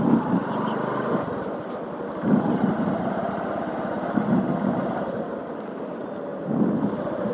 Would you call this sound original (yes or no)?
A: yes